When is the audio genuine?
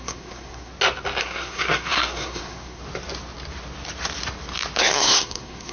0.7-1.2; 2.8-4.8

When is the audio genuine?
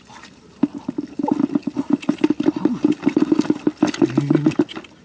0.0-5.0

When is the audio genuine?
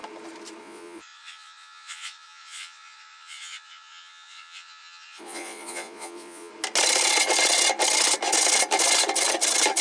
0.0-0.6; 6.5-9.8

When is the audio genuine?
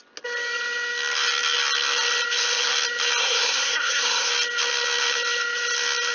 0.0-3.2; 4.3-6.1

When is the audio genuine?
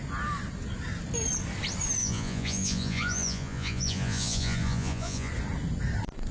0.0-2.0; 5.3-6.3